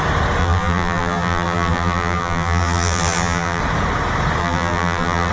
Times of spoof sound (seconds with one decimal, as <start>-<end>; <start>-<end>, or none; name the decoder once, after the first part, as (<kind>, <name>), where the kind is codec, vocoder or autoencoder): 0.4-3.6 (vocoder, BigVGAN v2); 4.4-5.3